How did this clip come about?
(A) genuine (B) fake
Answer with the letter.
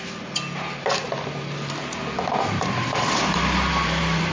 A